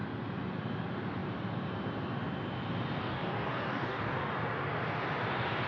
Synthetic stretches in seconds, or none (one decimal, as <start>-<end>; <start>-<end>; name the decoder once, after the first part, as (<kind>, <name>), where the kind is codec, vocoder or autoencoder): 3.0-4.3 (codec, DAC)